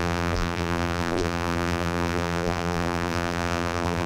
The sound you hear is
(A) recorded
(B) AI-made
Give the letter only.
B